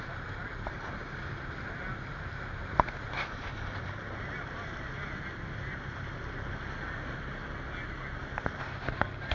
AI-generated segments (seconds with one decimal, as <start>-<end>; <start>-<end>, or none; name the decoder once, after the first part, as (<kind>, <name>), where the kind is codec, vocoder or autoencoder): 0.0-7.4 (vocoder, BigVGAN v2); 8.2-9.3